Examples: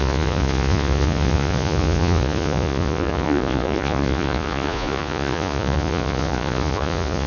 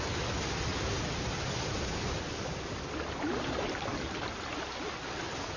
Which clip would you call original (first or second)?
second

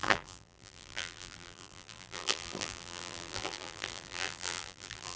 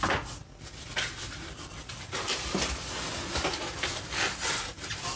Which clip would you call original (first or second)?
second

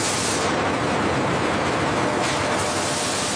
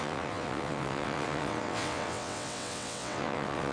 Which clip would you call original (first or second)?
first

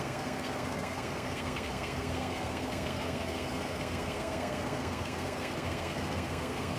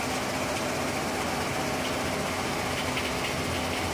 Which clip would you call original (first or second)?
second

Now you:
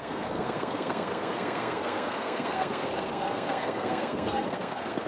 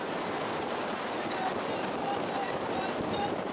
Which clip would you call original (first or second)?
second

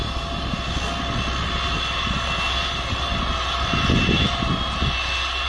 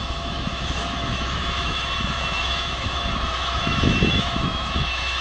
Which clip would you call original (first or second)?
first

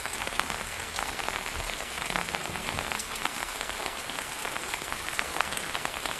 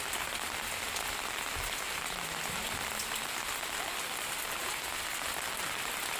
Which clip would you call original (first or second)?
second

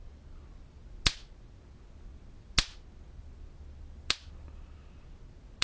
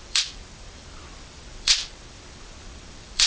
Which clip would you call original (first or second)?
first